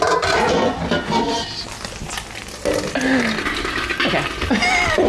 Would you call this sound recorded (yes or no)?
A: yes